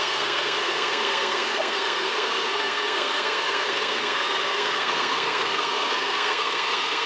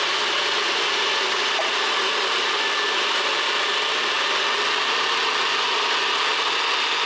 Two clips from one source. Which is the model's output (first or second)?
first